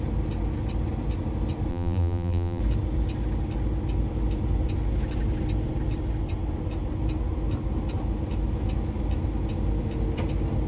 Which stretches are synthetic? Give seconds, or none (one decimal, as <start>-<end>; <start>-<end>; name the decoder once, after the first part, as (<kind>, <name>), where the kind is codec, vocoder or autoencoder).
1.7-2.6 (vocoder, BigVGAN v2)